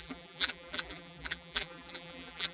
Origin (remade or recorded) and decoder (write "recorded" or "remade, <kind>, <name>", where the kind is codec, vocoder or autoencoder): remade, vocoder, BigVGAN v2